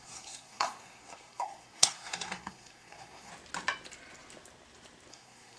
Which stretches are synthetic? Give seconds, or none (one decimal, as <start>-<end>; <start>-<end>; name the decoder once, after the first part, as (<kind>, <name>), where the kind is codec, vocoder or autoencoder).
0.0-3.3 (codec, SNAC); 5.1-5.6